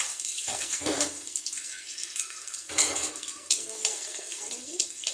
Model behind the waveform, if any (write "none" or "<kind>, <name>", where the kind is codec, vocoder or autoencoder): codec, SNAC